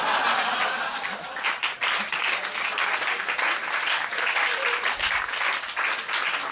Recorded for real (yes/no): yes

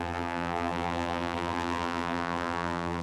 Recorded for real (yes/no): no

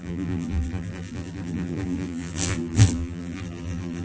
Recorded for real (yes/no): no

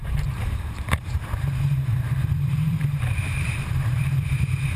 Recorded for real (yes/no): no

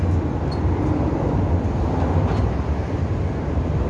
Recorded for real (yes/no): yes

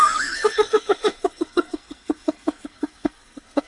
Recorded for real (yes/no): no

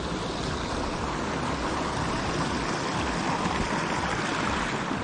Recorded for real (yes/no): yes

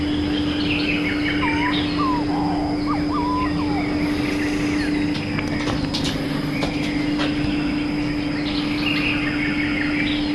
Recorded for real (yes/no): yes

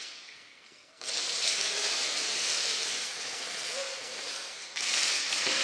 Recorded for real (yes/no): no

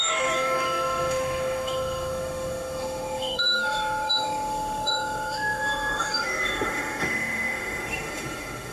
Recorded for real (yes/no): no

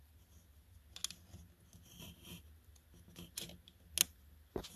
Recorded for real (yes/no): yes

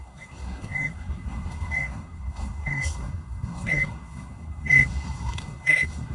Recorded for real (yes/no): no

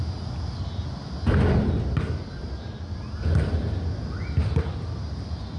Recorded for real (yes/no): yes